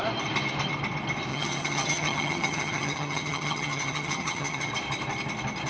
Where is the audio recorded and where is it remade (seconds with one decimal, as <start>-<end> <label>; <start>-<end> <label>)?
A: 0.0-1.3 recorded; 1.3-4.7 remade; 4.7-5.7 recorded

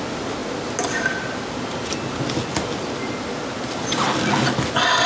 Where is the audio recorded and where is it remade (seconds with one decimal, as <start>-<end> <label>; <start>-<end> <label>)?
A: 0.0-5.1 recorded

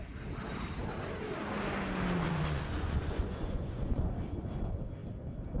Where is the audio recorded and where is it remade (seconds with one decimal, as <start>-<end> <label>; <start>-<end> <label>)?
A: 0.0-2.2 recorded; 2.2-4.1 remade; 4.1-5.6 recorded

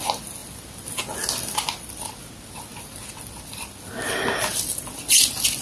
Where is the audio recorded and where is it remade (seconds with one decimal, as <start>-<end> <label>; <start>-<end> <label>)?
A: 0.0-5.6 recorded

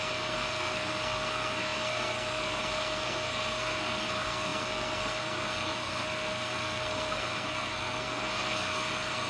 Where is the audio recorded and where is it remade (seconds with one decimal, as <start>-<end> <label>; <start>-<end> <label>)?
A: 0.0-9.3 remade

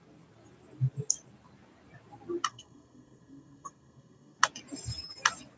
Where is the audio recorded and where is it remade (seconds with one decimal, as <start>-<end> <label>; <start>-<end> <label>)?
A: 0.0-2.5 recorded; 2.5-4.4 remade; 4.4-5.6 recorded

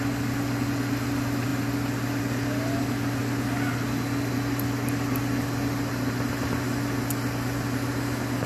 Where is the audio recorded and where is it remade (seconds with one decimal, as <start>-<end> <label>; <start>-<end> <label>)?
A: 0.0-1.5 recorded; 1.5-2.2 remade; 2.2-8.5 recorded

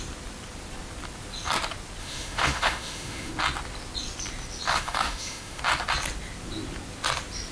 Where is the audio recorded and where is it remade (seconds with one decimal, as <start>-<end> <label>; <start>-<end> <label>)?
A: 0.0-2.0 recorded; 2.0-3.3 remade; 3.3-4.7 recorded; 4.7-5.6 remade; 5.6-7.5 recorded